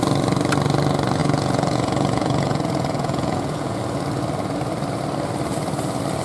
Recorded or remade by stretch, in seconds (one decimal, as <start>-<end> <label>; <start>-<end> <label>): 0.0-1.2 recorded; 1.2-3.8 remade; 3.8-6.2 recorded